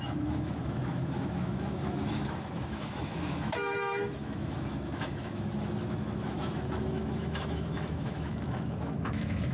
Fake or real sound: fake